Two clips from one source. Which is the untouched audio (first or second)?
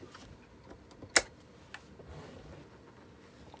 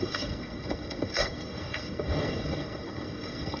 first